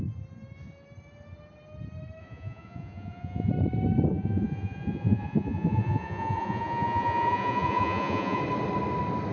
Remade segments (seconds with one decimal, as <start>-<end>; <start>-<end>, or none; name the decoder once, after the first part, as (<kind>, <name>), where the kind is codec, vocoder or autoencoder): 2.2-3.5 (vocoder, Vocos); 4.1-8.4